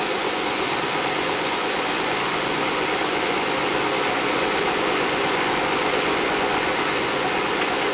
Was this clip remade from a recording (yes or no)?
yes